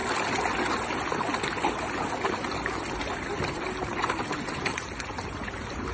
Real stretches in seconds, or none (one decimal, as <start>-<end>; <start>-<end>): 0.0-3.5